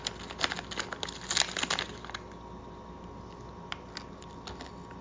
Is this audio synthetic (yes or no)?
no